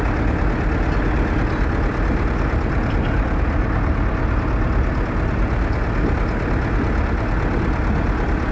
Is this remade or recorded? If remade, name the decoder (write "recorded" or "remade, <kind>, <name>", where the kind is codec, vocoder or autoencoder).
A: recorded